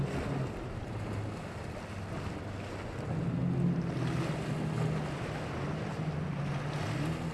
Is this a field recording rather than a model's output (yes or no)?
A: yes